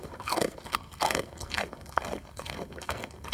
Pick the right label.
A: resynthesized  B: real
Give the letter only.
A